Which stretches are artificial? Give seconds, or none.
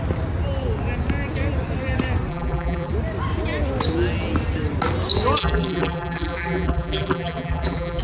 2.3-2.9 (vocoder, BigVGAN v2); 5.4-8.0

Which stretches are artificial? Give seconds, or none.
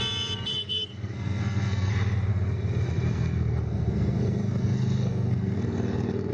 0.5-1.9 (codec, SNAC); 2.3-6.3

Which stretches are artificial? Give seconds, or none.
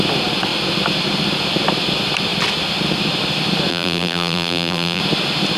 3.7-5.0 (vocoder, BigVGAN v2)